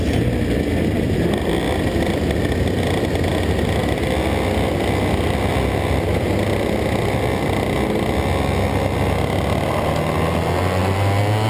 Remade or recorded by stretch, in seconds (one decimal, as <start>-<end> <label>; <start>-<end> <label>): 0.0-11.5 recorded